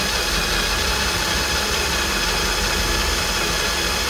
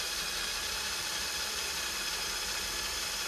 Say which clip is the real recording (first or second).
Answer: first